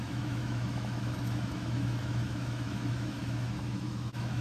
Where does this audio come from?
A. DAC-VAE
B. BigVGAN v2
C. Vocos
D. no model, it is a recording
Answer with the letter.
A